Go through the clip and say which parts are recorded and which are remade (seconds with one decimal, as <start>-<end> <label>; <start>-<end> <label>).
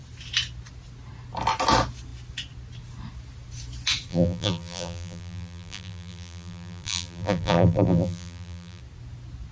0.0-4.1 recorded; 4.1-8.8 remade; 8.8-9.5 recorded